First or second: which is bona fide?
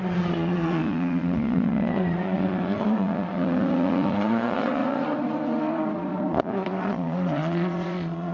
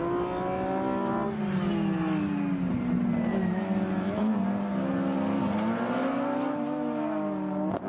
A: second